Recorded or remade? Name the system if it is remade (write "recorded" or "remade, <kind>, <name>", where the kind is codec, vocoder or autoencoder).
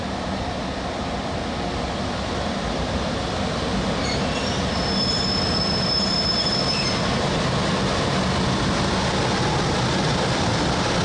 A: recorded